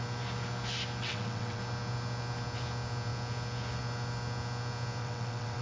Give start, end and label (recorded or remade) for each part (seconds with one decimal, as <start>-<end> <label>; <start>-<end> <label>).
0.0-1.0 recorded; 1.0-1.6 remade; 1.6-5.0 recorded; 5.0-5.6 remade